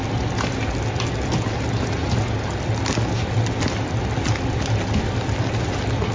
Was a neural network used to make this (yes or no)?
no